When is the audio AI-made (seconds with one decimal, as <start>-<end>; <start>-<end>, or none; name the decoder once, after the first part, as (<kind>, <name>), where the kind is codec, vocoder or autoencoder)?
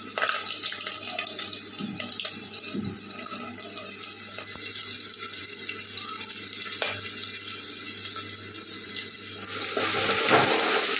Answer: none